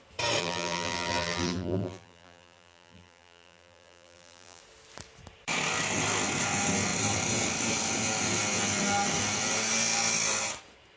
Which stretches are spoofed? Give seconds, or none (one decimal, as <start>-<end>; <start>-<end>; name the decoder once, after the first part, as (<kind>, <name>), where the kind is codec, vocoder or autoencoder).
0.4-4.6 (vocoder, BigVGAN v2)